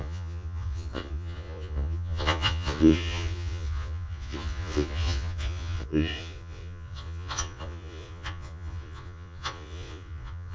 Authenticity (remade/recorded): remade